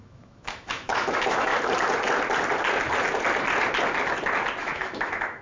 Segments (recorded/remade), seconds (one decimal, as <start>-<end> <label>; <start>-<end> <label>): 0.0-1.5 remade; 1.5-4.6 recorded; 4.6-5.4 remade